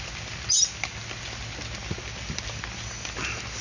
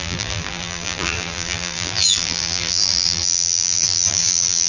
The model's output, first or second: second